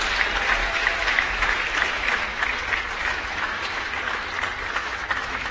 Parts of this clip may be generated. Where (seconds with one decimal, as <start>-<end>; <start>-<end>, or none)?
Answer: 0.6-2.4; 3.0-4.3; 4.8-5.5

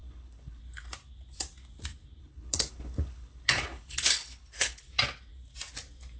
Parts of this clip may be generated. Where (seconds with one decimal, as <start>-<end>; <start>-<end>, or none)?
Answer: 0.0-0.6; 2.2-4.8

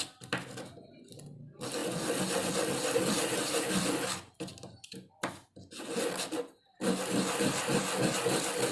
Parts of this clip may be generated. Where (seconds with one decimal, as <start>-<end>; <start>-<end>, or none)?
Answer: none

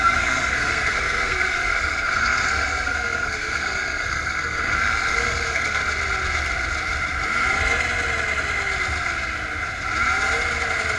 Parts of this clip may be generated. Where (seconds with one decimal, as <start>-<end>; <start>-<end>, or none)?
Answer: 0.0-5.8

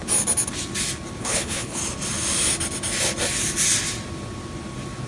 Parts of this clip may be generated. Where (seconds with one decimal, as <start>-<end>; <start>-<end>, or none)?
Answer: 1.2-1.8